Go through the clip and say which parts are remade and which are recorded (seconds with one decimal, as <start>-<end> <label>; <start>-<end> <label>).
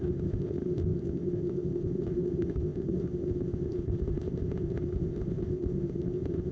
0.0-6.5 remade